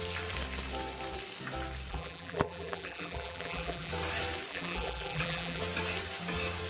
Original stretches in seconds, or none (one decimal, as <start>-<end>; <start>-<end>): 0.0-1.9; 3.9-4.5; 5.6-6.7